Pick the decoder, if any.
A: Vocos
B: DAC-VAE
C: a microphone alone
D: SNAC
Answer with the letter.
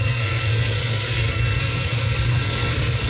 D